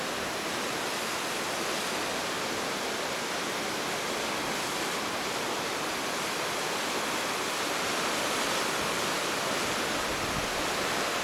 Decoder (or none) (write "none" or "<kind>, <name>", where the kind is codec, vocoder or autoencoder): none